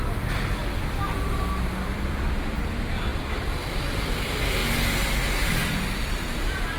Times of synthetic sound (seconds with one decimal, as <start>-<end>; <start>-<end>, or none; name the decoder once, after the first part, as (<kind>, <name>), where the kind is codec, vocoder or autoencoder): 0.0-0.6 (vocoder, BigVGAN v2); 1.7-4.6; 5.5-6.8